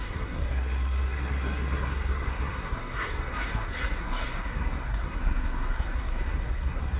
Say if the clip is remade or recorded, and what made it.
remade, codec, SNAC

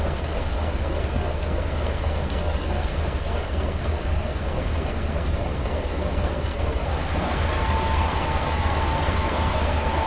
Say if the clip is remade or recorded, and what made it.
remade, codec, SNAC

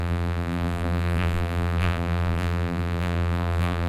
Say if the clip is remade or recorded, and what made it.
remade, vocoder, BigVGAN v2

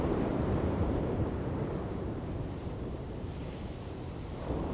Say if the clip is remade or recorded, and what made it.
remade, vocoder, BigVGAN v2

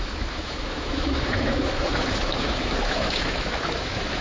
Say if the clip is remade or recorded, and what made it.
remade, autoencoder, DAC-VAE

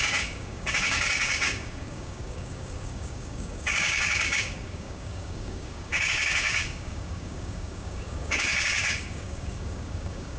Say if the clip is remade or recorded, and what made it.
remade, codec, DAC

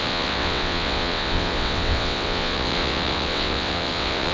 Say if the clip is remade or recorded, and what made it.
remade, vocoder, WaveNeXt